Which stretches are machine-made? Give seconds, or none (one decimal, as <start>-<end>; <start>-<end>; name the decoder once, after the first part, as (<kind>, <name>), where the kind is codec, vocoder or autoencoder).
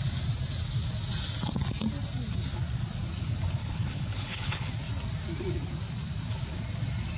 3.6-4.7 (codec, HILCodec)